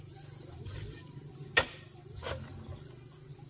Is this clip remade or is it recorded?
recorded